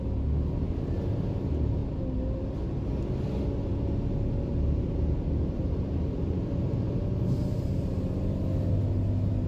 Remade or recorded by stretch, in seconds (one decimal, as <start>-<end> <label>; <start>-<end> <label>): 0.0-9.5 recorded

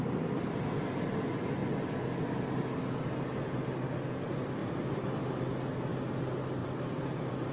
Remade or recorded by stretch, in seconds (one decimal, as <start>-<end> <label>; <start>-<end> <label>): 0.0-6.6 recorded; 6.6-7.5 remade